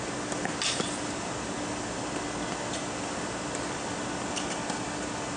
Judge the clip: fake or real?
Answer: real